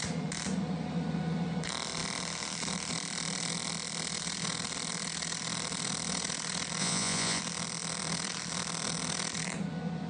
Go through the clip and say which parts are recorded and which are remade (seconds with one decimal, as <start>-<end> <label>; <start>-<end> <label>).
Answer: 0.0-6.8 recorded; 6.8-7.4 remade; 7.4-10.1 recorded